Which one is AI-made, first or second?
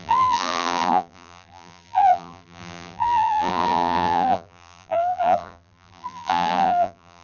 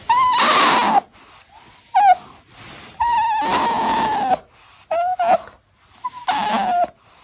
first